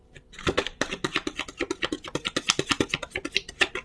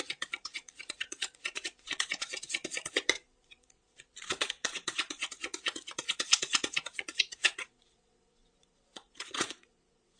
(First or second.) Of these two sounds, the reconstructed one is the second